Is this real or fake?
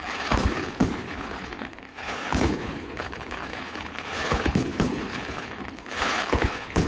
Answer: fake